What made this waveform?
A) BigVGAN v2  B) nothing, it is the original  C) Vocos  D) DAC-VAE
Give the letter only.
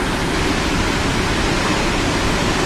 B